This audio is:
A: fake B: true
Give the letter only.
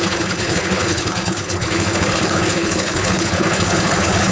A